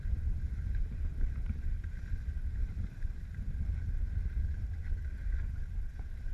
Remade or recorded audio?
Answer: recorded